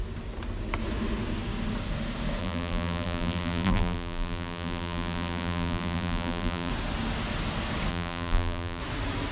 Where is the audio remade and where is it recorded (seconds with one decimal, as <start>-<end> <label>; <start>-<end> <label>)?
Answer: 0.0-2.4 recorded; 2.4-6.7 remade; 6.7-7.9 recorded; 7.9-8.8 remade; 8.8-9.3 recorded